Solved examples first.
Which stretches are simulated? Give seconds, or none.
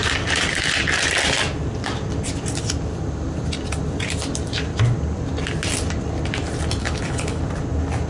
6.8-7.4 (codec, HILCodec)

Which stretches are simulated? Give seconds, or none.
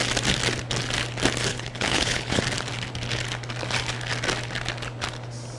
1.5-2.4 (codec, HILCodec)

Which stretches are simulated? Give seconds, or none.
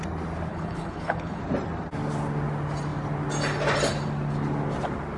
0.5-1.4 (codec, HILCodec)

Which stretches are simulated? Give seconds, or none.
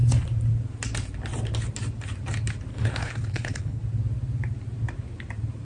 2.7-3.8 (codec, HILCodec)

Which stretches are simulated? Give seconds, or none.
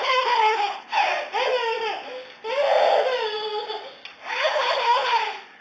0.0-1.1 (codec, HILCodec); 4.3-5.6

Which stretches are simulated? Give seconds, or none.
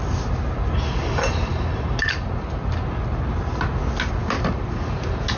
none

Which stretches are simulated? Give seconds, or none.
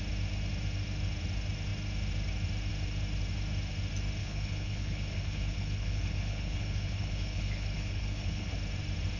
4.2-8.5 (codec, HILCodec)